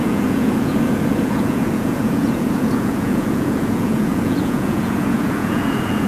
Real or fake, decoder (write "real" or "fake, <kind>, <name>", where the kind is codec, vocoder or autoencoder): fake, vocoder, Vocos